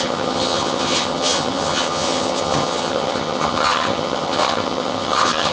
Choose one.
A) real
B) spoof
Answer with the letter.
B